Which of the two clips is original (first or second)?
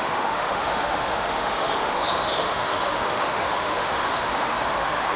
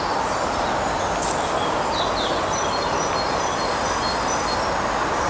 second